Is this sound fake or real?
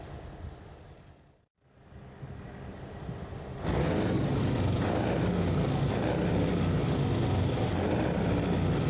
real